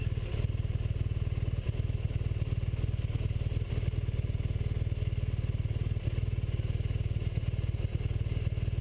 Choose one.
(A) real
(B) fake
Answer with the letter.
A